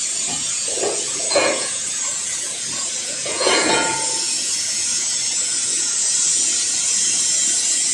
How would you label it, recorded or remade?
remade